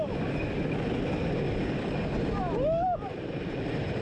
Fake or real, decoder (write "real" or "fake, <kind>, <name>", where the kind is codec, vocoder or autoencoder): real